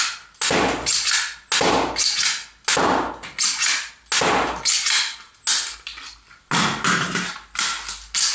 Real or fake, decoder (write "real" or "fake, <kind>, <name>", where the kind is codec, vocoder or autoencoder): real